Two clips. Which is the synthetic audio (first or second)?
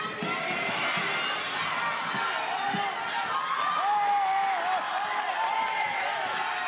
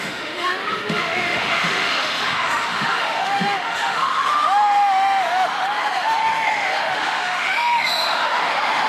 second